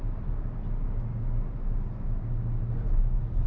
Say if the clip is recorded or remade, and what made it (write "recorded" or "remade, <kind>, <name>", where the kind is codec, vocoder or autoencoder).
recorded